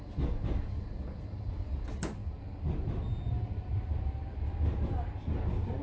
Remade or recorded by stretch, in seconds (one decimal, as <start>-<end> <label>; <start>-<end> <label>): 0.0-5.8 recorded